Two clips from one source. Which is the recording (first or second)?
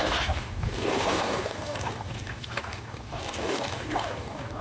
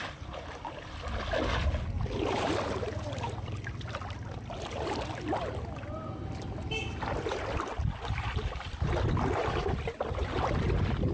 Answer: second